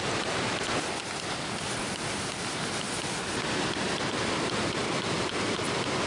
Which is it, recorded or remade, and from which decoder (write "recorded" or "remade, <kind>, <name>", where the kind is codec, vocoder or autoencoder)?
recorded